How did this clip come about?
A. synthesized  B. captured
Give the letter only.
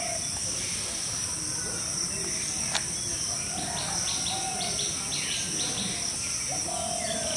B